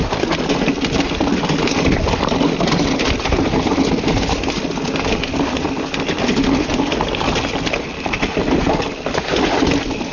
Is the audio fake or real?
real